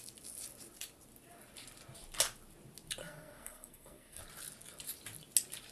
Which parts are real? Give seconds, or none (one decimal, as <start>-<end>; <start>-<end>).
0.0-3.0; 4.2-5.7

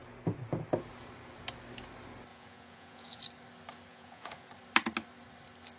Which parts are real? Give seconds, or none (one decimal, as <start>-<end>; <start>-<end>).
0.0-2.3; 3.2-3.9; 4.5-5.8

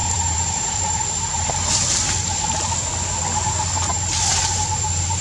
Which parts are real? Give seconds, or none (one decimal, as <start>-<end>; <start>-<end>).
none

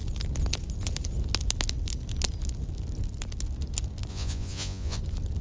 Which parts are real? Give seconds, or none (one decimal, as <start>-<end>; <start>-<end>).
0.0-4.1; 5.0-5.4

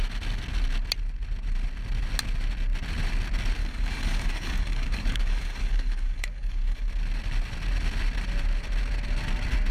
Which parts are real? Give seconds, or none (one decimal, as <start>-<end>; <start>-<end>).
0.0-3.6; 6.9-9.7

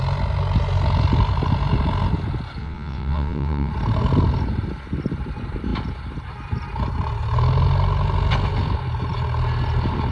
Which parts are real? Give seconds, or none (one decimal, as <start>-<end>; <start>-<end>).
0.0-2.6; 3.7-10.1

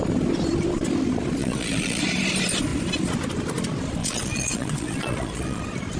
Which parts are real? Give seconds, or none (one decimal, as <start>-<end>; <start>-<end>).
0.0-1.4; 2.0-4.0; 5.6-6.0

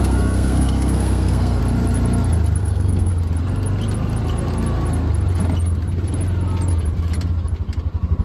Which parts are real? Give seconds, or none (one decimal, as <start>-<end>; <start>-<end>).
1.6-2.6; 3.1-8.2